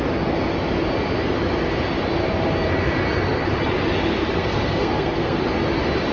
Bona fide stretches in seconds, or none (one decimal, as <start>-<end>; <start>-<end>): 0.0-4.2; 5.4-6.1